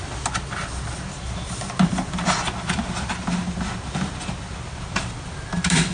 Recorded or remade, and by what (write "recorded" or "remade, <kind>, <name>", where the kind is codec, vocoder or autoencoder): recorded